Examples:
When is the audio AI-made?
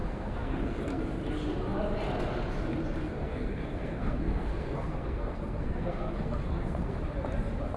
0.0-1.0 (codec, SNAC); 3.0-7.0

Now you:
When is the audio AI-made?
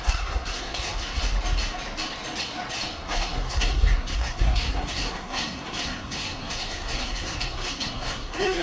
0.0-1.2 (codec, SNAC); 2.9-8.6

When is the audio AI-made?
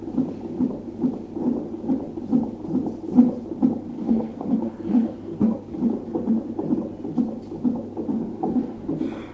3.9-5.8 (codec, SNAC); 8.1-8.9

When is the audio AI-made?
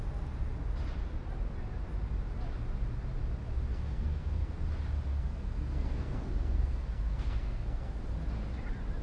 3.7-4.5 (codec, SNAC); 5.1-8.0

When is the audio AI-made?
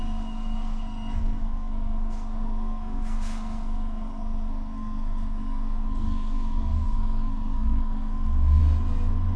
0.0-8.6 (codec, SNAC)